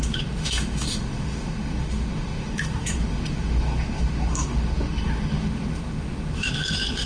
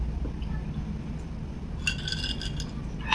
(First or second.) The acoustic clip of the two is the second